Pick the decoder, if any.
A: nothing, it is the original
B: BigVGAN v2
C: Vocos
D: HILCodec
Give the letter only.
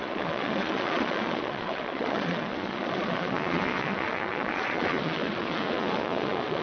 C